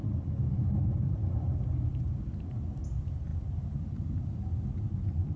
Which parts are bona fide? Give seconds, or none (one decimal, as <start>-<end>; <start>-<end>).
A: 0.0-0.8; 1.5-1.9; 2.9-3.3; 4.2-5.4